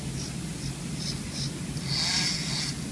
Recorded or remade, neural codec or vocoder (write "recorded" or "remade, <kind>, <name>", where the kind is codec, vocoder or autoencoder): recorded